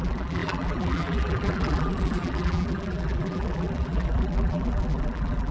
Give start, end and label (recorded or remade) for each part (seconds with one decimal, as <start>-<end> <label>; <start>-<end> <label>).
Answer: 0.0-5.5 remade